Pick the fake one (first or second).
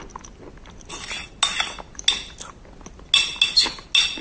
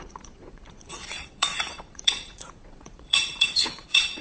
second